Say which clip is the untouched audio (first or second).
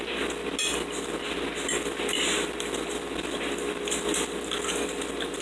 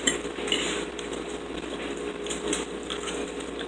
first